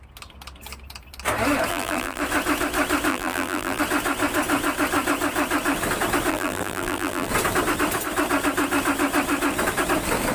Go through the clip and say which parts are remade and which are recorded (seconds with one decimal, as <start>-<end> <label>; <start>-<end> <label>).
0.0-1.7 recorded; 1.7-2.2 remade; 2.2-3.1 recorded; 3.1-3.8 remade; 3.8-6.3 recorded; 6.3-7.3 remade; 7.3-10.3 recorded